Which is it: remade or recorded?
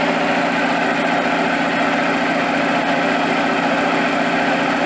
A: recorded